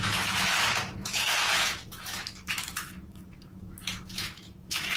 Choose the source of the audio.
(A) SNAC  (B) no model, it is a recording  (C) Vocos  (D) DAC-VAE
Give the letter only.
D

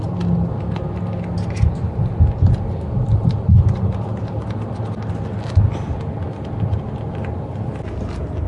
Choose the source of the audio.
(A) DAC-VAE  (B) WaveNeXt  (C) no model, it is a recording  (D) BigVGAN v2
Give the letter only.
C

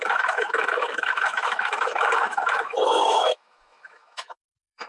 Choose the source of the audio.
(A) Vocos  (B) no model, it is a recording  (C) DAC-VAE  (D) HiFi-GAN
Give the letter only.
C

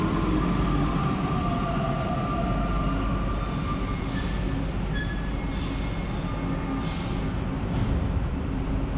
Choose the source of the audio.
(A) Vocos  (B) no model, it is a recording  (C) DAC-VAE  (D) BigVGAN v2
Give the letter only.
B